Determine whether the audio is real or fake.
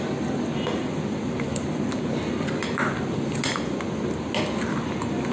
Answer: real